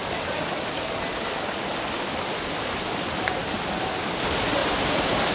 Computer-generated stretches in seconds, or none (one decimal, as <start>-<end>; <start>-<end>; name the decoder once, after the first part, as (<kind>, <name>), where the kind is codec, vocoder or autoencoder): 0.0-1.1 (vocoder, BigVGAN v2); 1.7-3.6; 4.6-5.3